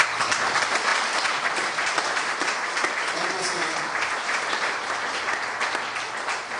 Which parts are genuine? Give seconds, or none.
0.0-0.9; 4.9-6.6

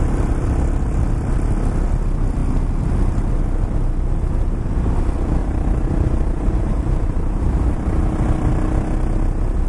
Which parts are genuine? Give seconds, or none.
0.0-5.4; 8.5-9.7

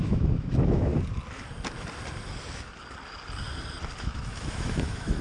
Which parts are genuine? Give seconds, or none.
0.9-4.0

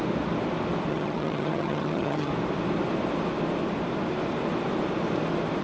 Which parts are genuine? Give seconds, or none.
0.0-0.9; 2.3-5.6

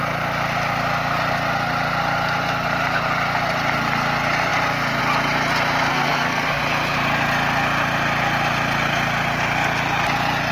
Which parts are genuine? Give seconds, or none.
0.0-5.9; 6.6-10.5

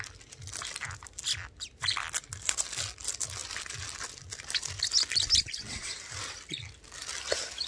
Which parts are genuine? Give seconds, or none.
0.0-7.7